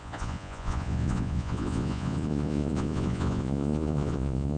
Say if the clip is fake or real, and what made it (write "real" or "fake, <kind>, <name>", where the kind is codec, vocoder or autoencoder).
fake, vocoder, Vocos